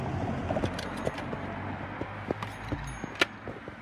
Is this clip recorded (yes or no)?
yes